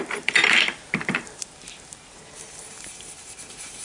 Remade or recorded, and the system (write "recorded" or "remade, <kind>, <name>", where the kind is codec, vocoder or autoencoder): remade, vocoder, BigVGAN v2